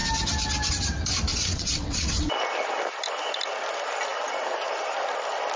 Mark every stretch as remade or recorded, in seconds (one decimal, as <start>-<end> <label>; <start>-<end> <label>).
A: 0.0-1.3 recorded; 1.3-2.3 remade; 2.3-5.6 recorded